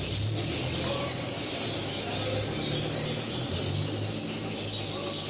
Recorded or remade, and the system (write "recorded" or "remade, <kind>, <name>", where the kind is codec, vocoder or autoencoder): recorded